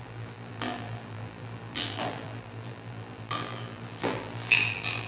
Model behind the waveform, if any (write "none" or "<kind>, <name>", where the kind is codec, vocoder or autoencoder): vocoder, BigVGAN v2